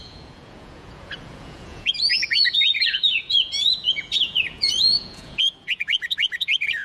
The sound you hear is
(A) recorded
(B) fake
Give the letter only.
B